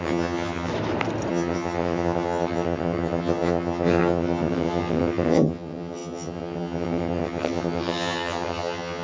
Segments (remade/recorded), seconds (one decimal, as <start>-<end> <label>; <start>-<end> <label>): 0.0-0.7 remade; 0.7-1.3 recorded; 1.3-9.0 remade

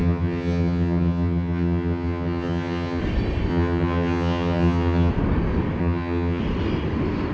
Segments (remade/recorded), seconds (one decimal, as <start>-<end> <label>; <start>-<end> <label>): 0.0-3.0 remade; 3.0-3.5 recorded; 3.5-5.1 remade; 5.1-5.8 recorded; 5.8-6.4 remade; 6.4-7.3 recorded

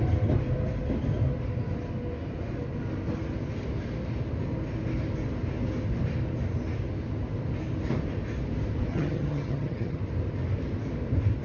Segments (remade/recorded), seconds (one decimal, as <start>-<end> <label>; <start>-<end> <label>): 0.0-8.9 recorded; 8.9-10.0 remade; 10.0-11.4 recorded

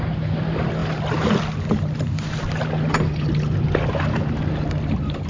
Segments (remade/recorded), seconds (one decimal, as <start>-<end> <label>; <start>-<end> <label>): 0.0-5.3 recorded

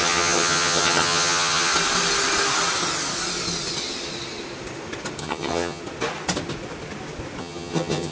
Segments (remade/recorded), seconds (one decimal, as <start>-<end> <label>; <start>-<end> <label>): 0.0-1.7 remade; 1.7-5.2 recorded; 5.2-5.8 remade; 5.8-7.4 recorded; 7.4-8.1 remade

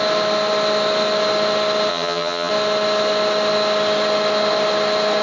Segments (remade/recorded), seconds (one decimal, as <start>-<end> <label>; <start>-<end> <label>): 0.0-1.9 recorded; 1.9-2.5 remade; 2.5-5.2 recorded